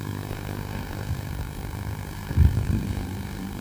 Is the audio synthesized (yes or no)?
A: yes